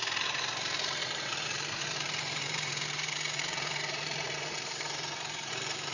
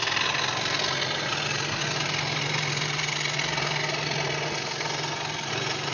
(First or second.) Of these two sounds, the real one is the second